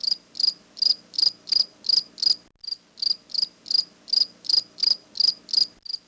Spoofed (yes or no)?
no